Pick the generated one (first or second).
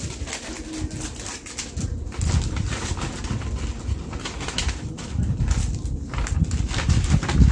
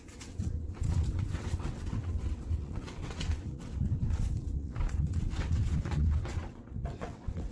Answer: second